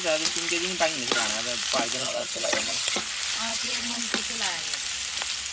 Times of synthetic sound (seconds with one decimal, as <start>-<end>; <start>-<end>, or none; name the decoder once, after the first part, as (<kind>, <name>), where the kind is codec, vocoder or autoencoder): 2.0-3.0 (vocoder, HiFi-GAN); 3.5-4.0